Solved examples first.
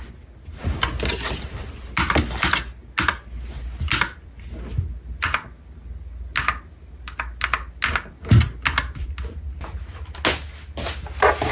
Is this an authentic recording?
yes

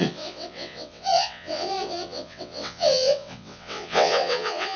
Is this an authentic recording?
no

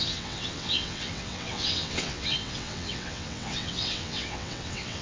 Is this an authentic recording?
no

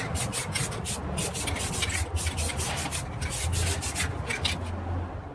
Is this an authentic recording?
yes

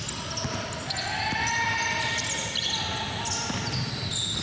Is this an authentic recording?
yes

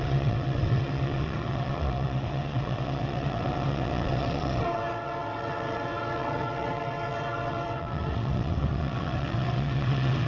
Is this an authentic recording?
no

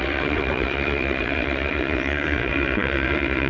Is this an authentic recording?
no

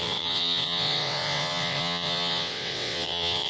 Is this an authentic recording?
no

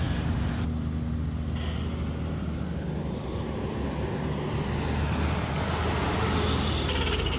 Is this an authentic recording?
yes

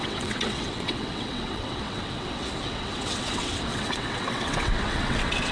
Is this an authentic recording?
no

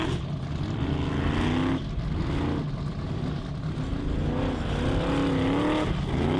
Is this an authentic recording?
yes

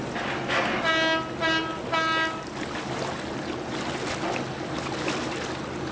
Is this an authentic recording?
yes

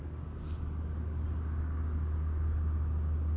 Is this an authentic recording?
yes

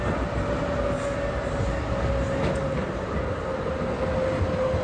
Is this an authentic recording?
yes